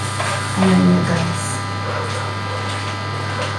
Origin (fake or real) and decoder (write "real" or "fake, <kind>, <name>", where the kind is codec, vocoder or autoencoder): real